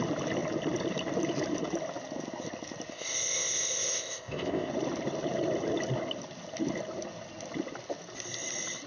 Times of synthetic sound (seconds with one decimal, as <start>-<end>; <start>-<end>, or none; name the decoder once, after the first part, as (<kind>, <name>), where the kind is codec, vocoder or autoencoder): 2.9-4.7 (codec, ZipCodec)